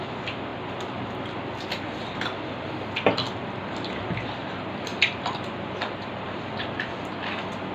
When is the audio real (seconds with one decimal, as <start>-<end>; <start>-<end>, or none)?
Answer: 0.0-4.9; 6.9-7.7